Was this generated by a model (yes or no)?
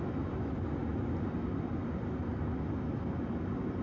no